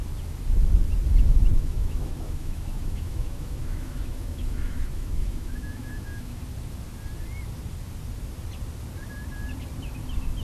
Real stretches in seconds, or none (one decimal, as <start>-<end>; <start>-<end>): 0.0-1.5; 6.4-10.4